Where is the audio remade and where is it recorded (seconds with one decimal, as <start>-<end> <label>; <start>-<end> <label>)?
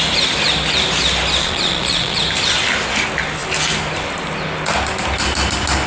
0.0-1.4 recorded; 1.4-2.2 remade; 2.2-5.9 recorded